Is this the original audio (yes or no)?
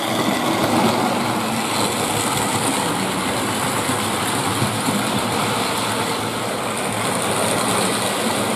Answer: yes